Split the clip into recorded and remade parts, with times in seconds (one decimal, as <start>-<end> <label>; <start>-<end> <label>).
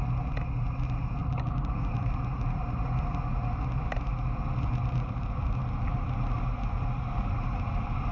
0.0-8.1 recorded